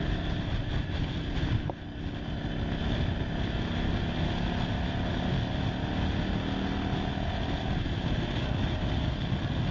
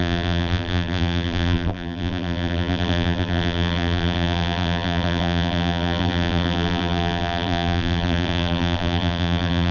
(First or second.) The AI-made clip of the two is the second